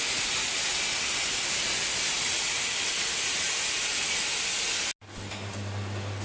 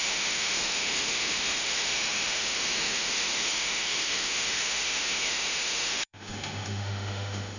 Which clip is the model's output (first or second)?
second